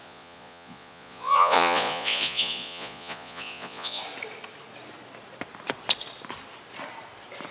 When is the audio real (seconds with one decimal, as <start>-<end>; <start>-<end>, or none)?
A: 4.0-7.5